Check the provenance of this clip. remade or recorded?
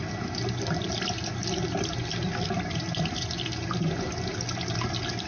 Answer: recorded